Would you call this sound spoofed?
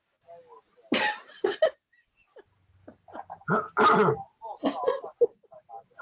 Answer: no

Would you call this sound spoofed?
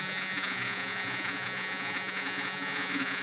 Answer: yes